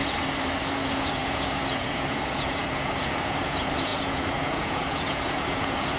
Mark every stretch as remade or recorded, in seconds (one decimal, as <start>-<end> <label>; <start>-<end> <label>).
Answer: 0.0-0.6 recorded; 0.6-6.0 remade